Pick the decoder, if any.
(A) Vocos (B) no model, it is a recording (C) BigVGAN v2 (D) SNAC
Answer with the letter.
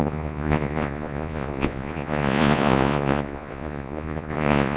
A